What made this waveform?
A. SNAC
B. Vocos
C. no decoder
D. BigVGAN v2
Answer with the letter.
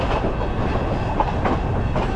C